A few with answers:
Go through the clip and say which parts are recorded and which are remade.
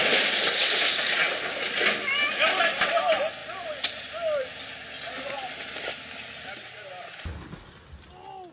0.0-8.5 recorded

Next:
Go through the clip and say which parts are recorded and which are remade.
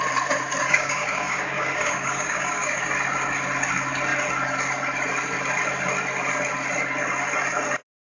0.0-0.6 recorded; 0.6-2.8 remade; 2.8-8.1 recorded